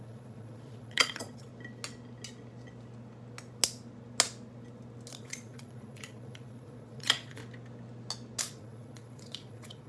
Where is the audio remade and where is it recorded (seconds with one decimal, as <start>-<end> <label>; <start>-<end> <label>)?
0.0-1.5 remade; 1.5-5.1 recorded; 5.1-7.4 remade; 7.4-8.4 recorded; 8.4-9.9 remade